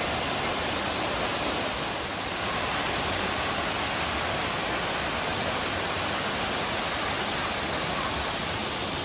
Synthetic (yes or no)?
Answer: no